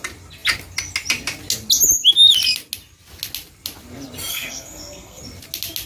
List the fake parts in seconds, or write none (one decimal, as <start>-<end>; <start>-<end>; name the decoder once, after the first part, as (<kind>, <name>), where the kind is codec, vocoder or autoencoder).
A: 4.3-5.2 (codec, SNAC)